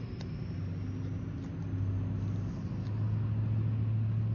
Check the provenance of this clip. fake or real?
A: real